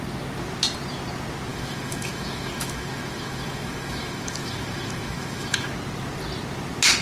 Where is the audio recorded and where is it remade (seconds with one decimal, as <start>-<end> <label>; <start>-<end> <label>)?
0.0-1.5 recorded; 1.5-5.7 remade; 5.7-7.0 recorded